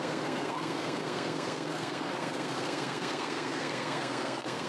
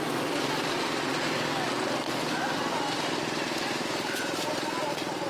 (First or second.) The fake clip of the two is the first